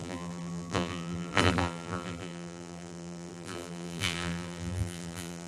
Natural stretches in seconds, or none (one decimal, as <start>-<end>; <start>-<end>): none